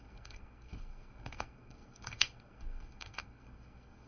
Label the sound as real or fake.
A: fake